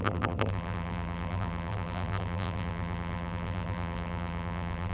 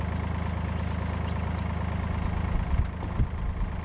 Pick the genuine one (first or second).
second